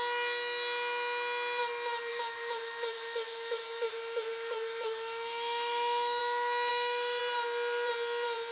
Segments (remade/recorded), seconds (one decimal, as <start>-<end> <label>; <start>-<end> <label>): 0.0-2.1 recorded; 2.1-6.2 remade; 6.2-6.7 recorded; 6.7-7.2 remade; 7.2-8.5 recorded